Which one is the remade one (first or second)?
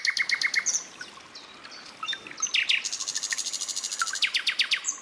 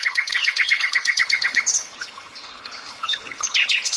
second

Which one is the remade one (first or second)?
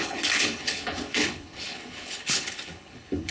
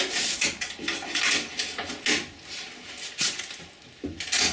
first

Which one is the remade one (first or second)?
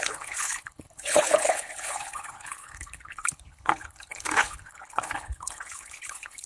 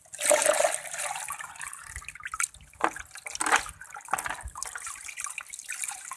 first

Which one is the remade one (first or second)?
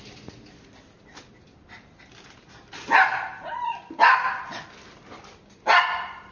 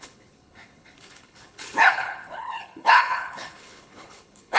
second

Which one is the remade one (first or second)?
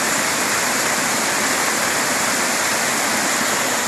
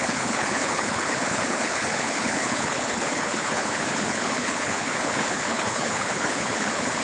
second